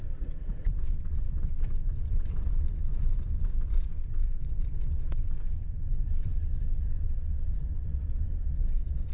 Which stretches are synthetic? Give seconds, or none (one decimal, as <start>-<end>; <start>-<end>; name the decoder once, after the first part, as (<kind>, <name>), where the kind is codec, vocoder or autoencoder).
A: 0.0-9.1 (vocoder, WaveNeXt)